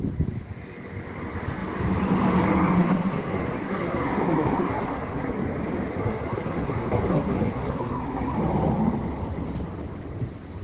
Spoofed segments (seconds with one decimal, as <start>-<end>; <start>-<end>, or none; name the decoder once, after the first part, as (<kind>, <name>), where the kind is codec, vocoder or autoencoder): 2.8-5.3 (codec, SNAC); 6.0-8.4